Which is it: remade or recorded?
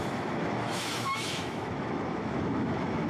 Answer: remade